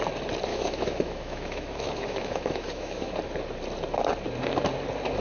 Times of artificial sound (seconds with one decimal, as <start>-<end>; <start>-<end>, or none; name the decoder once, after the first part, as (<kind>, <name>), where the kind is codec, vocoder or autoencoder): 0.5-3.1 (autoencoder, DAC-VAE)